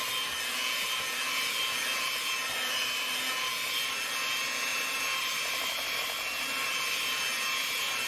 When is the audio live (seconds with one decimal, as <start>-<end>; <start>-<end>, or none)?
0.0-2.4; 3.2-4.7; 6.7-8.1